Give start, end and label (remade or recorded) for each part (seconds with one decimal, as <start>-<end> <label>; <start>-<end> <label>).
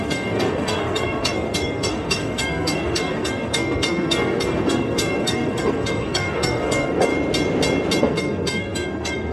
0.0-7.1 remade; 7.1-8.0 recorded; 8.0-9.3 remade